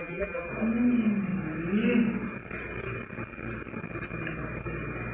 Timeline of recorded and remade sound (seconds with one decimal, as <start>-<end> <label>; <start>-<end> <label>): 0.0-0.5 remade; 0.5-5.1 recorded